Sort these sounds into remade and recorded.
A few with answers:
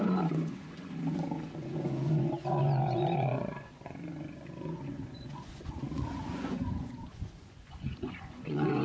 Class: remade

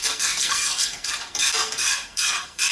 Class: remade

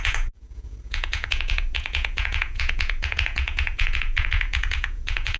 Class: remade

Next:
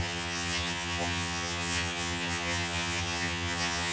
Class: remade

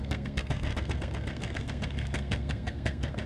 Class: remade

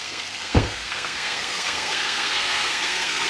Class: remade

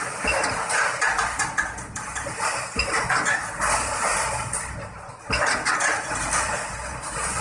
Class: recorded